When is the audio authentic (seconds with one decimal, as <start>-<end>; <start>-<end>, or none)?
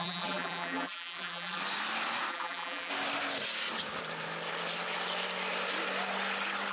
1.6-2.3; 2.9-6.7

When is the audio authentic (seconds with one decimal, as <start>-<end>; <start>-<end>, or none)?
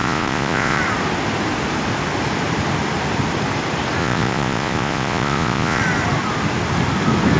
0.8-4.0; 5.8-7.4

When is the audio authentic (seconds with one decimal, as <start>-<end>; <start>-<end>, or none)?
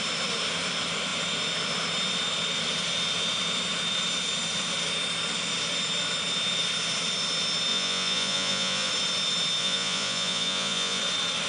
0.0-7.7; 8.9-9.6; 11.0-11.5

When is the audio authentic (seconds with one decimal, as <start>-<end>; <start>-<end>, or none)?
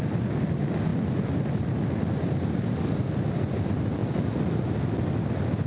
0.0-5.7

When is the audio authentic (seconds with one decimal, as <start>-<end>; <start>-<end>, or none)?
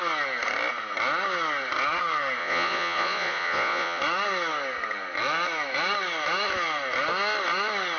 0.0-2.4; 4.0-8.0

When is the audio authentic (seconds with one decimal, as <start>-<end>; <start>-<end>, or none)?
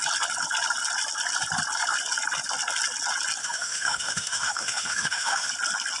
0.0-3.4; 5.5-6.0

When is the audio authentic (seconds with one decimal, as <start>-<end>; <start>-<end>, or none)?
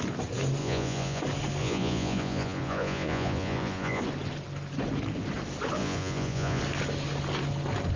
0.0-0.6; 1.2-1.6; 4.0-5.8; 6.6-8.0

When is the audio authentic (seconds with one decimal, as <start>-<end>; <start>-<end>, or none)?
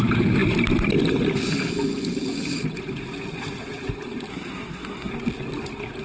0.0-4.3; 5.1-6.0